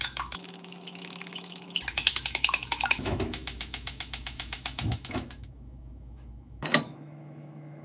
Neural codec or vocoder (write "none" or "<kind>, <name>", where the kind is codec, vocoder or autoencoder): autoencoder, DAC-VAE